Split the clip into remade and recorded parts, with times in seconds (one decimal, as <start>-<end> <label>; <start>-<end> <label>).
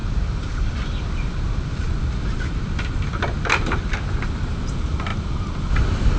0.0-6.2 recorded